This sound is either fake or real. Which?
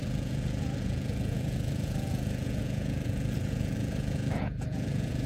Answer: fake